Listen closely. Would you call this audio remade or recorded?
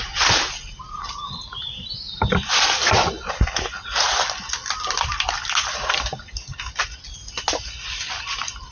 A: recorded